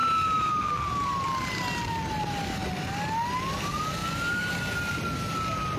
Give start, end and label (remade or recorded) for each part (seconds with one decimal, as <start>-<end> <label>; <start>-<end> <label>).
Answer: 0.0-5.8 recorded